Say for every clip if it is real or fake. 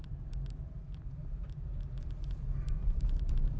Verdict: real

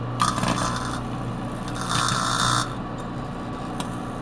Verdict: real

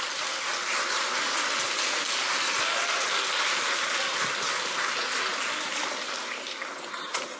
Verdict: real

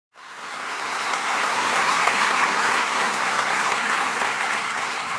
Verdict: fake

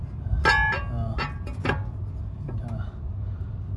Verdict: real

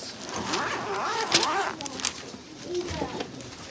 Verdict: real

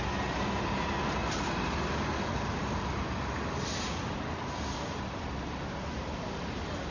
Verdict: real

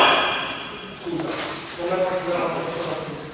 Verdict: real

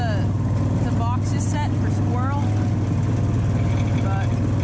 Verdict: real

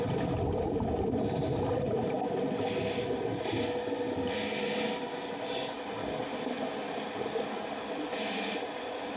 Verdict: real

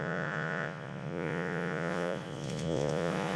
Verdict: fake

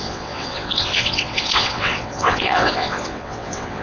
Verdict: fake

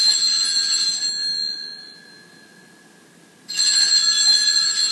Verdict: real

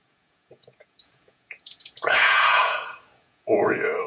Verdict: fake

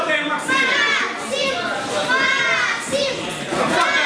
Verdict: real